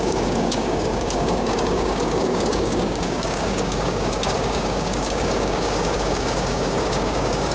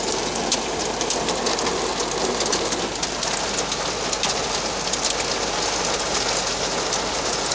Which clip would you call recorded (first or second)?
second